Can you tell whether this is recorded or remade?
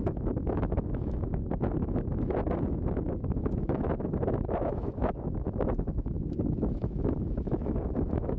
remade